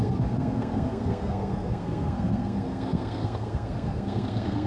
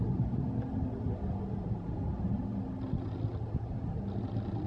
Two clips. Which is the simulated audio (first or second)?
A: first